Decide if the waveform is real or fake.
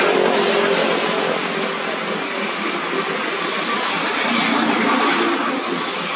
real